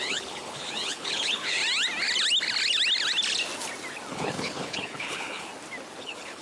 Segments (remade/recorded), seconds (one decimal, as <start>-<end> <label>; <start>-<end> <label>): 0.0-1.6 remade; 1.6-4.1 recorded; 4.1-5.5 remade; 5.5-6.0 recorded; 6.0-6.4 remade